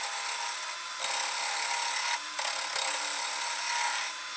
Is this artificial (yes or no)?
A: no